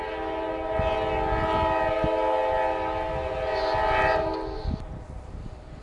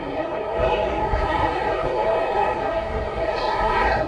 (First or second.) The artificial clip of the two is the second